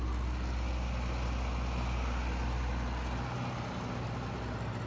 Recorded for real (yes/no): yes